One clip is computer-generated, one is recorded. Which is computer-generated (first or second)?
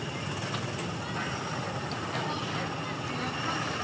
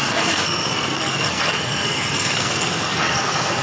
second